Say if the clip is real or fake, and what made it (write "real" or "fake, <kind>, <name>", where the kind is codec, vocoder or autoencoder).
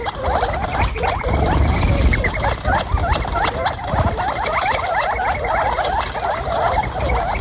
real